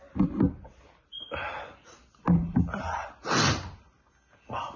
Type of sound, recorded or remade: recorded